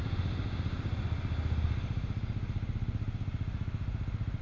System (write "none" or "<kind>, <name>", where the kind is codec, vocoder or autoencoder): none